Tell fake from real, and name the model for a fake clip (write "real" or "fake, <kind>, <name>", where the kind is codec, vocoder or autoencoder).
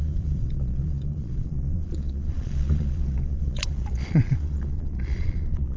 fake, vocoder, Vocos